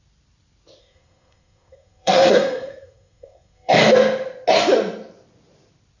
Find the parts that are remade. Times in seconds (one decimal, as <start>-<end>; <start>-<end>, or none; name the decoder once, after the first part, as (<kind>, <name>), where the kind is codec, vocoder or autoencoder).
0.8-3.7 (codec, SNAC)